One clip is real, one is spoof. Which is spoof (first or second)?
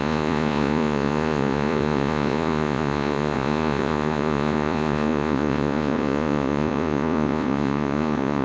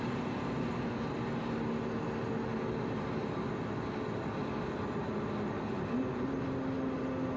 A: first